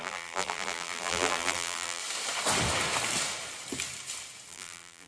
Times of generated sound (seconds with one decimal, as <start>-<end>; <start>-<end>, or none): 0.0-2.0; 4.5-5.1